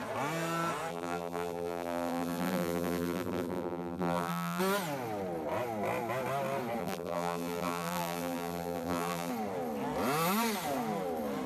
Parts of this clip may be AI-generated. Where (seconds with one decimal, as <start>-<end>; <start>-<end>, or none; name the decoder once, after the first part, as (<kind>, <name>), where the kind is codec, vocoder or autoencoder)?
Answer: 0.9-4.6 (vocoder, BigVGAN v2); 6.8-9.3